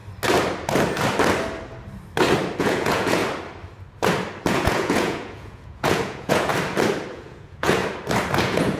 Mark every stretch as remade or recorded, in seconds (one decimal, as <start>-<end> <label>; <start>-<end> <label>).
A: 0.0-2.6 recorded; 2.6-3.2 remade; 3.2-4.5 recorded; 4.5-6.5 remade; 6.5-7.1 recorded; 7.1-7.8 remade; 7.8-8.4 recorded; 8.4-8.8 remade